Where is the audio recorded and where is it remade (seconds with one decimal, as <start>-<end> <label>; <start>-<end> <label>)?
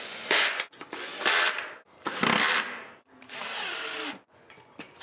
0.0-1.1 remade; 1.1-4.1 recorded; 4.1-5.0 remade